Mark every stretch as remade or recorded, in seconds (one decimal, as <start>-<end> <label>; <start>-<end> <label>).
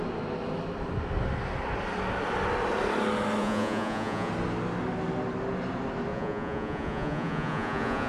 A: 0.0-3.4 recorded; 3.4-4.3 remade; 4.3-6.1 recorded; 6.1-8.1 remade